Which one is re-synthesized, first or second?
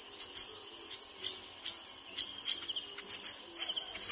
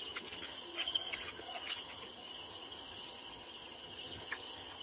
second